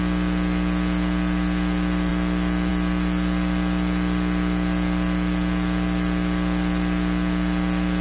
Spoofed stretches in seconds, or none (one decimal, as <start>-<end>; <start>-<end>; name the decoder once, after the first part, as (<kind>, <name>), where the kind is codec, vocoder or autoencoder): none